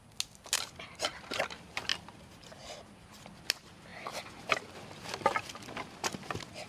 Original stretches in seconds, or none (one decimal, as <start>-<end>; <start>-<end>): 0.0-6.7